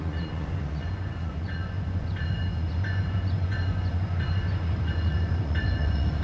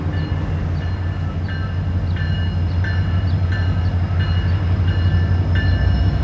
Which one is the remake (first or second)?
first